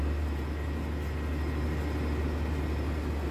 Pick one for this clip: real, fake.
real